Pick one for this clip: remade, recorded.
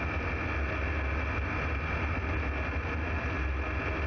recorded